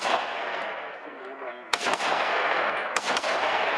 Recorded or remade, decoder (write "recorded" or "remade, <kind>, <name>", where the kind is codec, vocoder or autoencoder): remade, codec, SNAC